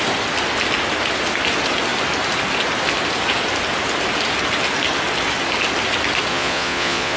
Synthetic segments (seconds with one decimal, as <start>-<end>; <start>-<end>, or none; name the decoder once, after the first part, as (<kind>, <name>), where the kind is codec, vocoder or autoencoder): 6.3-7.2 (vocoder, Vocos)